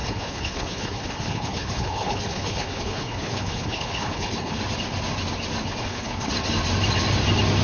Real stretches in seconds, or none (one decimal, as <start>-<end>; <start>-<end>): 4.6-5.6; 6.3-7.6